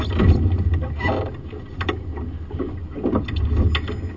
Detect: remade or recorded recorded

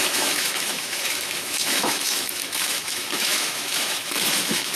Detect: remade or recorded remade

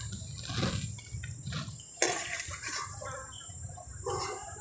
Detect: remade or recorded recorded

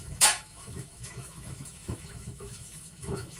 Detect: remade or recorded remade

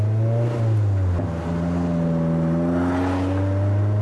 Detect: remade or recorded recorded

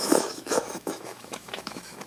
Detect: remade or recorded remade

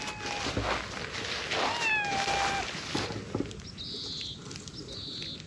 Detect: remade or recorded recorded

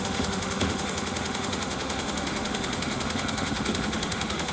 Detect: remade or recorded remade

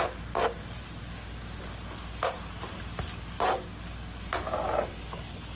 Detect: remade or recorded recorded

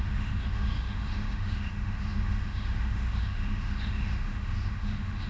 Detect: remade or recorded remade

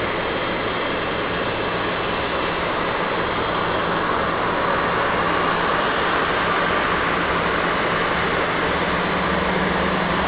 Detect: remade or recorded recorded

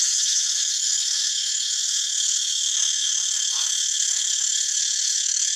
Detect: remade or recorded remade